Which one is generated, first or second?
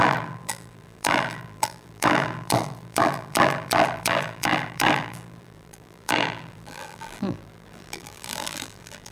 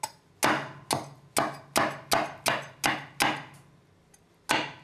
first